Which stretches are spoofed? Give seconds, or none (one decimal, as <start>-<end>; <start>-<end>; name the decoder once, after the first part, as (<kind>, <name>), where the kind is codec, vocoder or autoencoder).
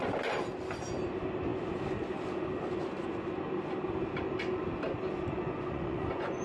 5.4-6.4 (vocoder, Vocos)